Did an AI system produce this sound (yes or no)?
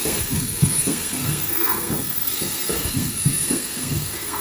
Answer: yes